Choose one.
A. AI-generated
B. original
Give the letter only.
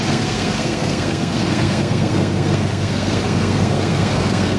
A